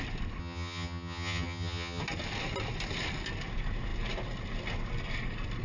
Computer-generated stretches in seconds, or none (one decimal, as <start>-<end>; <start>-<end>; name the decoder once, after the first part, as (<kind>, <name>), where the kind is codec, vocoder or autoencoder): 0.4-2.0 (vocoder, HiFi-GAN)